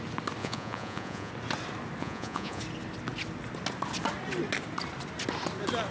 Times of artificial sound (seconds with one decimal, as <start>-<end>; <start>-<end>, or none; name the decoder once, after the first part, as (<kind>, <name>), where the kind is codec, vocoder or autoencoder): 0.4-1.3 (vocoder, Vocos); 2.0-2.6